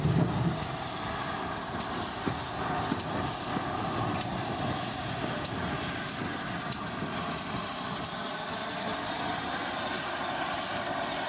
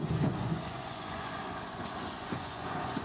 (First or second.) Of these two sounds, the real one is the first